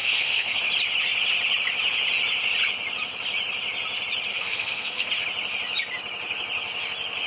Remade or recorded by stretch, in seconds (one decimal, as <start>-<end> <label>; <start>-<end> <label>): 0.0-0.6 remade; 0.6-4.3 recorded; 4.3-5.1 remade; 5.1-7.3 recorded